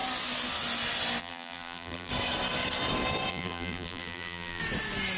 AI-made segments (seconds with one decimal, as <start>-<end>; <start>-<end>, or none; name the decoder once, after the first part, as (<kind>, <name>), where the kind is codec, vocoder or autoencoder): 1.2-2.1 (vocoder, BigVGAN v2); 3.3-4.6